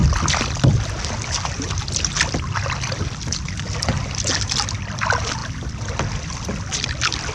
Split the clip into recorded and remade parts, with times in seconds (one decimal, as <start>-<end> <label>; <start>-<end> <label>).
0.0-7.3 recorded